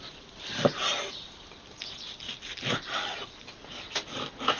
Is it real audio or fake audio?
real